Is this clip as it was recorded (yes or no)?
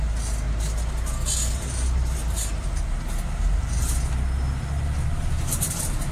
yes